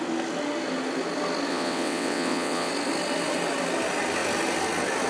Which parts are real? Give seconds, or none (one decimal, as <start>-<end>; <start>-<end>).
0.0-1.5; 2.7-5.1